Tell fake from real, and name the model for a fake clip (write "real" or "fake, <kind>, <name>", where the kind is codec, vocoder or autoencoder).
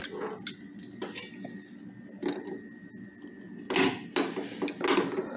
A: real